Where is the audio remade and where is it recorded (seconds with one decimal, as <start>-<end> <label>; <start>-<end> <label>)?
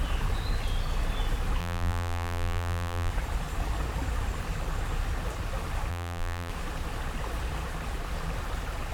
0.0-1.6 recorded; 1.6-3.1 remade; 3.1-5.9 recorded; 5.9-6.5 remade; 6.5-8.9 recorded